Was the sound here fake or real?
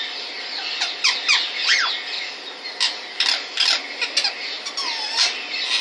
real